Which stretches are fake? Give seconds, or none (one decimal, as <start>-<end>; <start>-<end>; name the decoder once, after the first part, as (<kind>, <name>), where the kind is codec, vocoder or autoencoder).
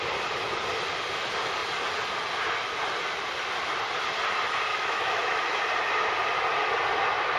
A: 4.7-5.6 (autoencoder, DAC-VAE)